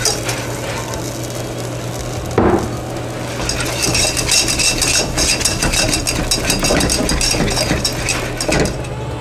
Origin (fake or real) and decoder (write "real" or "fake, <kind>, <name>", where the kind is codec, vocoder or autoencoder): real